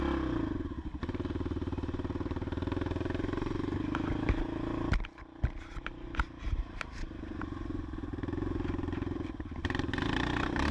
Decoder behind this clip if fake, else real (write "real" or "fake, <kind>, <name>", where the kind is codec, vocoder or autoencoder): fake, vocoder, BigVGAN v2